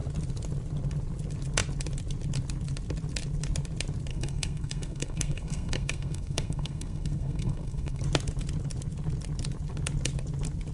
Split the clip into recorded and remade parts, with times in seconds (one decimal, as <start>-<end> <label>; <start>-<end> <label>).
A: 0.0-4.1 recorded; 4.1-8.0 remade; 8.0-10.7 recorded